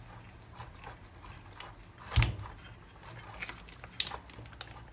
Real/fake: real